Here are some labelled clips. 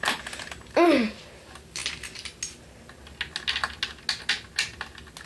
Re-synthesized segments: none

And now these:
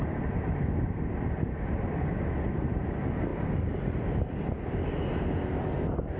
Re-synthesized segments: none